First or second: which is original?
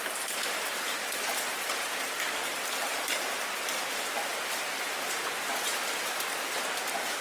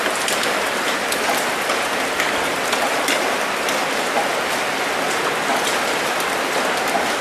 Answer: second